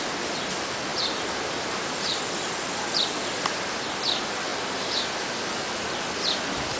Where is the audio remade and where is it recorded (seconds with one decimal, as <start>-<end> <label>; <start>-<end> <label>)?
0.0-0.9 recorded; 0.9-2.2 remade; 2.2-4.5 recorded; 4.5-5.0 remade; 5.0-6.8 recorded